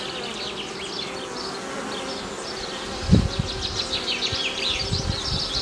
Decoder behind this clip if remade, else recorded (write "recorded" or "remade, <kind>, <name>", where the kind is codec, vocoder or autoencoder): recorded